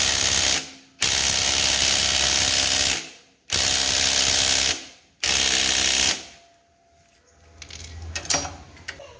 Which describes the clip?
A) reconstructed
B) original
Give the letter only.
B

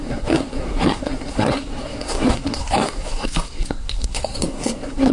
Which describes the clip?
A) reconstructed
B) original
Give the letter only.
A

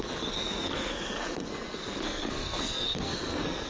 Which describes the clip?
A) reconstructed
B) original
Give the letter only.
A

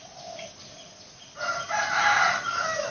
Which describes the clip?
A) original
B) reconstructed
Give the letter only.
A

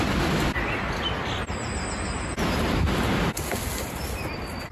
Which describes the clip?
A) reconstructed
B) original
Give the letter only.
B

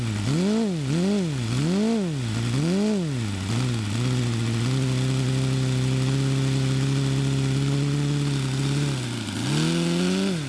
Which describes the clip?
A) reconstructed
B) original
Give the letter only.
B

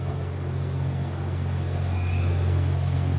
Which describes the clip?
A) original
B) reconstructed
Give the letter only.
B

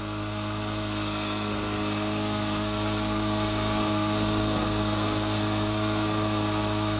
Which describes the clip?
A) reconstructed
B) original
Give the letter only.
A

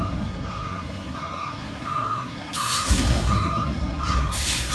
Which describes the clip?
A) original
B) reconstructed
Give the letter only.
B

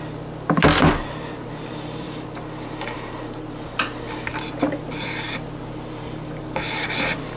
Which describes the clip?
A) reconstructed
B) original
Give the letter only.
B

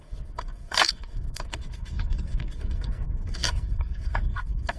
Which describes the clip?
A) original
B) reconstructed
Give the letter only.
B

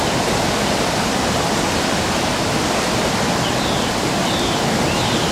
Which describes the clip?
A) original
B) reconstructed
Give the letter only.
A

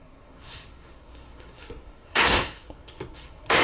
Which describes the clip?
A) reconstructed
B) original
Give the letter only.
A